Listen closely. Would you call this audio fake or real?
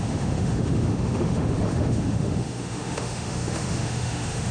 fake